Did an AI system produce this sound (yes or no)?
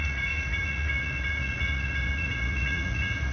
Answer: yes